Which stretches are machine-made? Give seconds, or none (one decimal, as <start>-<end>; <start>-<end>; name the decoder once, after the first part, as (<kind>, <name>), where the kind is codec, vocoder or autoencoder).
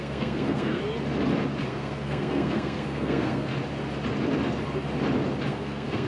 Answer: 0.0-0.8 (codec, SNAC); 1.6-3.5; 5.5-6.1